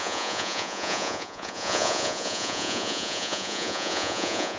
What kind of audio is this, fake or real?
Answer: fake